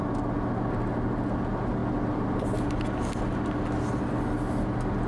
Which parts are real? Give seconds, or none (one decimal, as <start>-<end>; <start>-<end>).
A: 0.0-5.1